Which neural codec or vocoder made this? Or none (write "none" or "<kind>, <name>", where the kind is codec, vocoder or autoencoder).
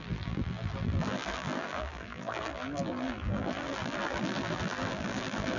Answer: vocoder, BigVGAN v2